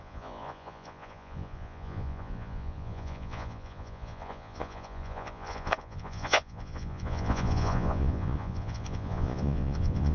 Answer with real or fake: fake